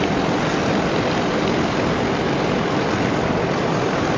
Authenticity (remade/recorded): recorded